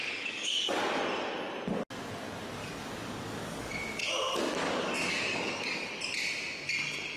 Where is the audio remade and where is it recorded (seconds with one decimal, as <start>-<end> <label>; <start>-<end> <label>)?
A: 0.0-1.0 remade; 1.0-2.6 recorded; 2.6-3.7 remade; 3.7-4.6 recorded; 4.6-5.9 remade; 5.9-7.2 recorded